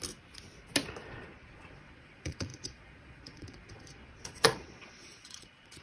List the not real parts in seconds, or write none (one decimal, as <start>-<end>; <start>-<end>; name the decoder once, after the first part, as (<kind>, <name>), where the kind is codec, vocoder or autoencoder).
1.1-5.8 (vocoder, Vocos)